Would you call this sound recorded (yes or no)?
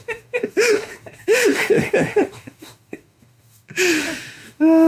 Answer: no